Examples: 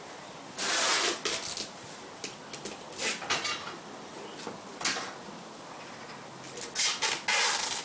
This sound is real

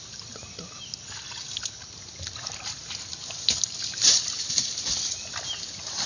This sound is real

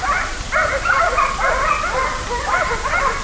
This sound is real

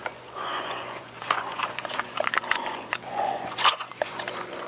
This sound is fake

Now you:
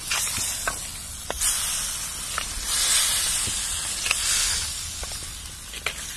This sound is real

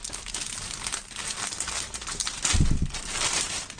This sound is real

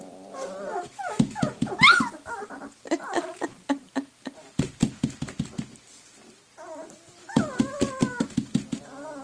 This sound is real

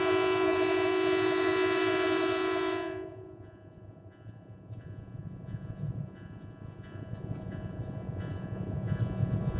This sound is fake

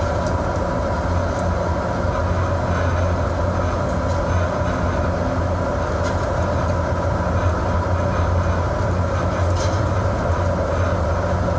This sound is real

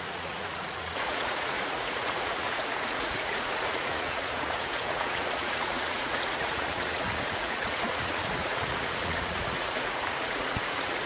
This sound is fake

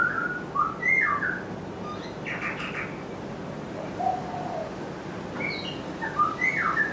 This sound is real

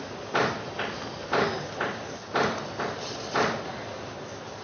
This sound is real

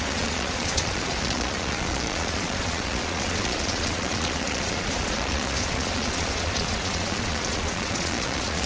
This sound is fake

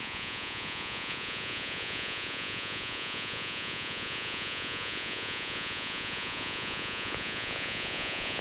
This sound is fake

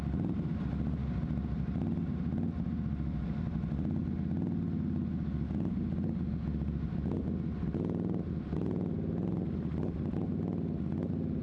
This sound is real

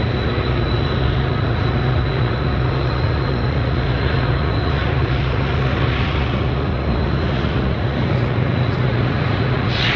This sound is fake